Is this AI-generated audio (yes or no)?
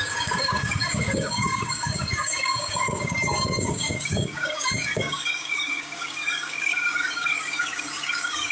yes